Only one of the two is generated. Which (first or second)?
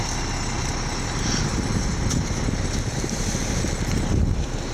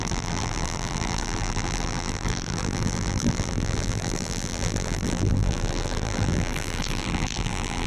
second